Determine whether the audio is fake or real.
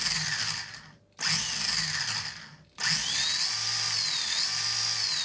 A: real